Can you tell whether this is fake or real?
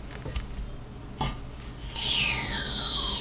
real